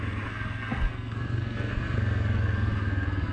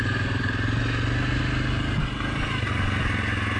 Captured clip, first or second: second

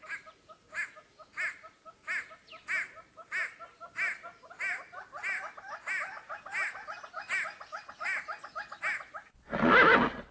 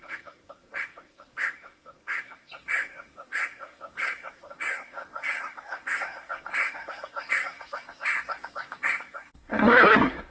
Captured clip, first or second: first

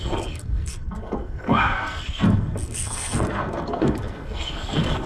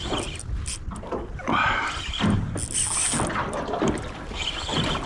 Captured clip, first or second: second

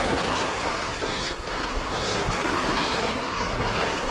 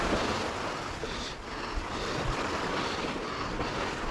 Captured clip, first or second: second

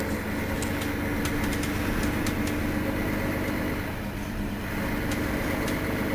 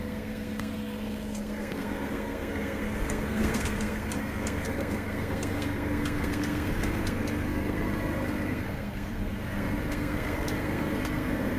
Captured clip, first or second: first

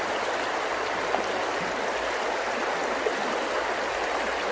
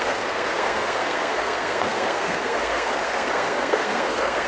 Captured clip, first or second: first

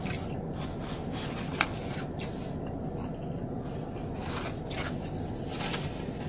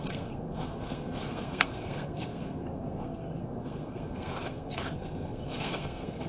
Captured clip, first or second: first